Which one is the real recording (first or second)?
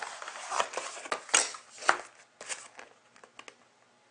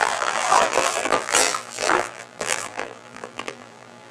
first